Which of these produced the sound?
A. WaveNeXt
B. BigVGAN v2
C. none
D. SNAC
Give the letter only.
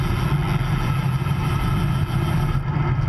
C